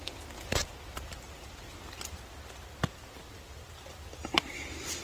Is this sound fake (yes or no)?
no